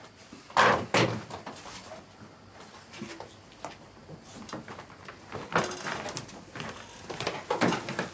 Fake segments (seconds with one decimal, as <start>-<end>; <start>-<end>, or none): none